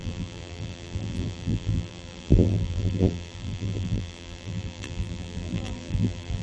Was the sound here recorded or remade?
remade